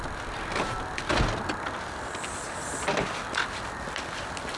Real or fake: real